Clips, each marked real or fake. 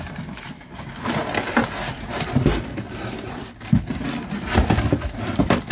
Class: real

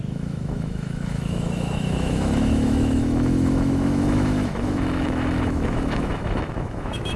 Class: fake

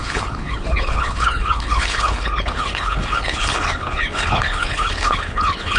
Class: fake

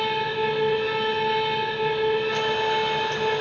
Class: real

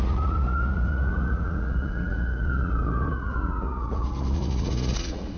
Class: fake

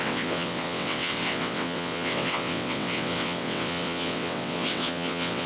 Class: fake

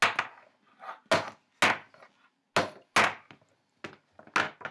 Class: real